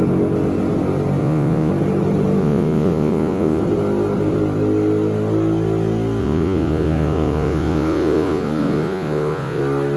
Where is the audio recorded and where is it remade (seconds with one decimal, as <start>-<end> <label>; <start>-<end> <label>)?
0.0-1.2 recorded; 1.2-1.7 remade; 1.7-2.4 recorded; 2.4-3.6 remade; 3.6-6.2 recorded; 6.2-9.6 remade; 9.6-10.0 recorded